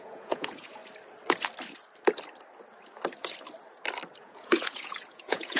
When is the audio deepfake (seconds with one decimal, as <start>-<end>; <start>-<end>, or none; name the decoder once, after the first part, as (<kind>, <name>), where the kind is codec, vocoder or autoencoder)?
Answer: 0.0-0.8 (vocoder, Vocos); 4.2-5.6